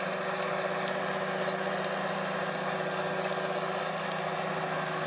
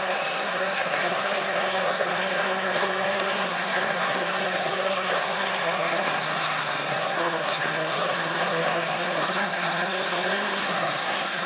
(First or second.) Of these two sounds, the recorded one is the first